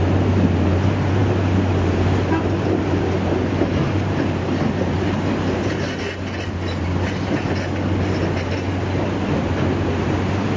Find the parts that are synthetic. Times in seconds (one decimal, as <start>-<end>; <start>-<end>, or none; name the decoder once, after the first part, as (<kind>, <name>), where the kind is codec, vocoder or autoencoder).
none